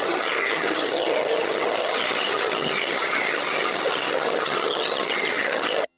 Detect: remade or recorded remade